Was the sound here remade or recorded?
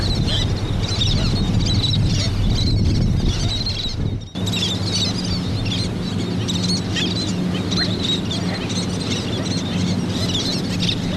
recorded